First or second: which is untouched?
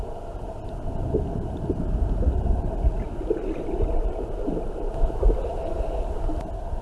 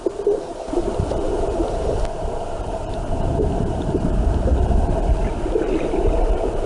first